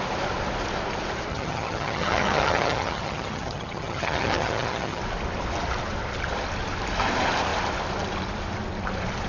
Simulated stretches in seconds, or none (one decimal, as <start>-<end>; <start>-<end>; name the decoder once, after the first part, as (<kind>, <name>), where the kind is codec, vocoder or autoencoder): 1.3-5.0 (vocoder, HiFi-GAN)